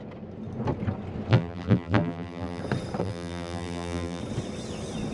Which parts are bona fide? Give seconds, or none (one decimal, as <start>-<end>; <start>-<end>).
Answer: 0.0-1.3; 2.6-3.0; 4.2-5.1